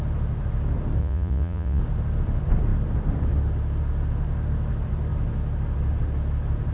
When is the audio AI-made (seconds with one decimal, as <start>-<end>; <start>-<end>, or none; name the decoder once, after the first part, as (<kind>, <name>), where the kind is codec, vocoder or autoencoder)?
1.0-1.8 (vocoder, Vocos)